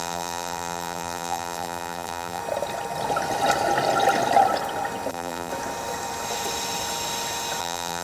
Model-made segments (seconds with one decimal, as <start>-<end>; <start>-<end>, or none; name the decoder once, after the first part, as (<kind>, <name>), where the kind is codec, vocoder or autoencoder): 0.0-2.4 (vocoder, BigVGAN v2); 5.1-5.5; 7.6-8.0